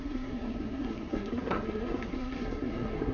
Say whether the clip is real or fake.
fake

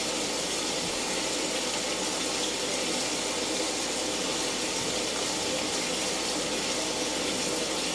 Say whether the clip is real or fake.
real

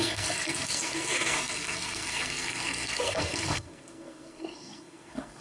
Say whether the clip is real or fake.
fake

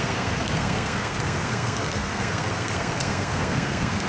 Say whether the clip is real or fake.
fake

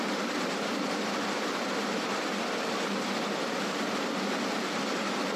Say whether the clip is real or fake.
real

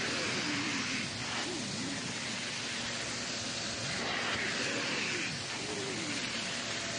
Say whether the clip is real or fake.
real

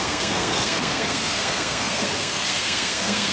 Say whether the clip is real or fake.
fake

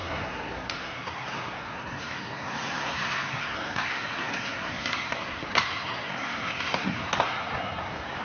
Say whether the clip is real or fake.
fake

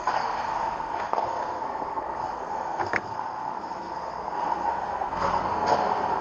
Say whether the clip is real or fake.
fake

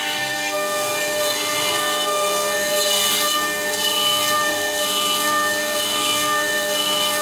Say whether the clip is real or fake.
fake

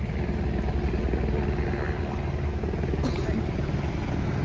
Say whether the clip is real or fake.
real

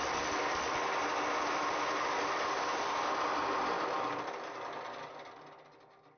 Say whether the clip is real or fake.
real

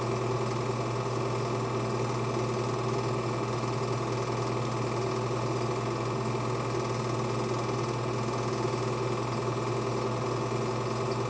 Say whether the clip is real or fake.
real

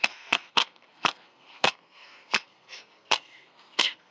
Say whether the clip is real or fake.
fake